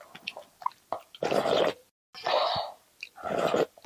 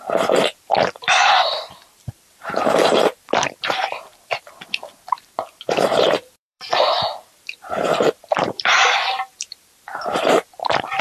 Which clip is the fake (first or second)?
second